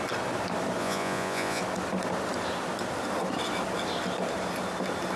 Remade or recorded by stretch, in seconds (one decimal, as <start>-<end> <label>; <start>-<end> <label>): 0.0-0.8 recorded; 0.8-1.6 remade; 1.6-5.2 recorded

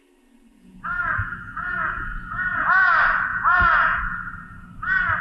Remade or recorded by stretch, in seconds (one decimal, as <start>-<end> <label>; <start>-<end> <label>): 0.0-0.5 recorded; 0.5-2.9 remade; 2.9-3.3 recorded; 3.3-4.0 remade; 4.0-5.2 recorded